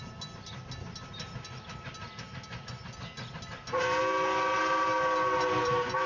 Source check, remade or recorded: recorded